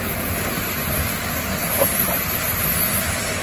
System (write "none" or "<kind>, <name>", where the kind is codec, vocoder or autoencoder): none